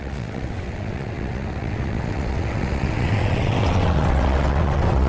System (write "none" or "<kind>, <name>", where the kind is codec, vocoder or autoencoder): vocoder, WaveNeXt